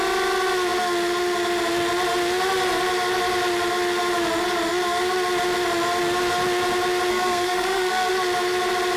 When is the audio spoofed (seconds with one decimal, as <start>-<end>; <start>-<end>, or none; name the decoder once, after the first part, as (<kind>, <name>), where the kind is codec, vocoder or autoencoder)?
7.1-8.1 (codec, SNAC)

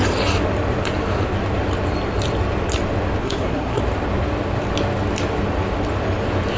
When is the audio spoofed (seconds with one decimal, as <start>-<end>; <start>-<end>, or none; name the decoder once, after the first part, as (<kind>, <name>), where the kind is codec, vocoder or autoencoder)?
3.2-3.8 (codec, SNAC)

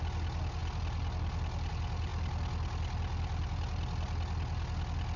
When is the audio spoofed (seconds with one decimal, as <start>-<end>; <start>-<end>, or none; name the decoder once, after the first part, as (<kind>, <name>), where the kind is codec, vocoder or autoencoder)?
none

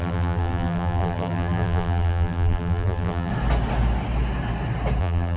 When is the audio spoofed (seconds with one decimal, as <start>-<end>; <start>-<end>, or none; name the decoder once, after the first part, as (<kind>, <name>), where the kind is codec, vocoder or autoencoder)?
0.0-3.3 (vocoder, BigVGAN v2); 5.0-5.4